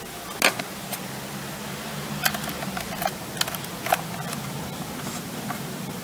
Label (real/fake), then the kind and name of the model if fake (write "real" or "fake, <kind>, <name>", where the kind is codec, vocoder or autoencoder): real